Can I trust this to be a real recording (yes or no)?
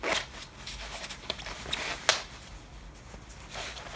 yes